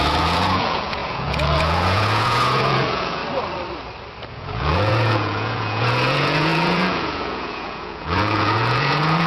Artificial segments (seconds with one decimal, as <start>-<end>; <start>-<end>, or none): 0.0-3.2; 4.3-9.3